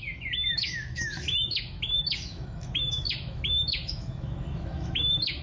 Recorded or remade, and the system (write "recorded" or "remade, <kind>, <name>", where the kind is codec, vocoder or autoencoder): remade, autoencoder, DAC-VAE